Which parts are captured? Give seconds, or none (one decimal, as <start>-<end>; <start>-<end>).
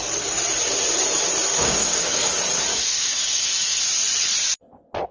0.0-1.5; 2.3-2.7; 3.8-5.1